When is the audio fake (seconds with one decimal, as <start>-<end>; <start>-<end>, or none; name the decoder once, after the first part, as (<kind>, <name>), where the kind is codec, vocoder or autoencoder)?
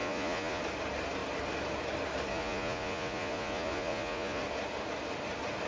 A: 0.0-0.6 (vocoder, Vocos); 2.3-4.4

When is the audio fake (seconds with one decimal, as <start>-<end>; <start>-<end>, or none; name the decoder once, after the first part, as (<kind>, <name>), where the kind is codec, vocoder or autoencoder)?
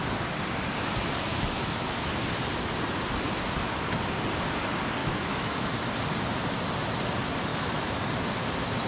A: 1.3-2.1 (autoencoder, DAC-VAE); 5.0-5.8; 7.5-8.0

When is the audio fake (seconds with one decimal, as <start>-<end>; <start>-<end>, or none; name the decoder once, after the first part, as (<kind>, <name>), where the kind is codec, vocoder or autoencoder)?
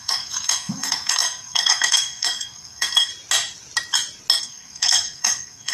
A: 0.0-3.1 (codec, SNAC); 4.4-5.7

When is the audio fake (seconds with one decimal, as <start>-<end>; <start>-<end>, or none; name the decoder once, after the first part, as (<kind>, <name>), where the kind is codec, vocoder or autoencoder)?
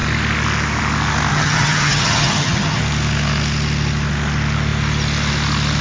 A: 1.3-2.8 (vocoder, HiFi-GAN)